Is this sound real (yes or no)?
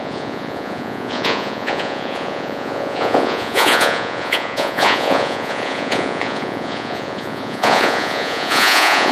no